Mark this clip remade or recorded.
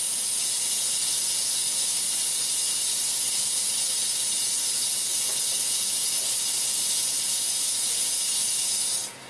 remade